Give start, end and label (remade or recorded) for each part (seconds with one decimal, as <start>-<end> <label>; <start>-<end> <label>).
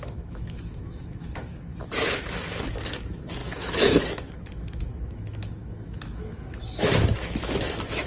0.0-8.1 remade